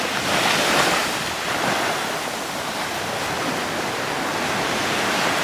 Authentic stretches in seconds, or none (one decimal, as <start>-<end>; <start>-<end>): 0.0-5.4